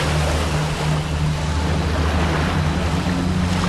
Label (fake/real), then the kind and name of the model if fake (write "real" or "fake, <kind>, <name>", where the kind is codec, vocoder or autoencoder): real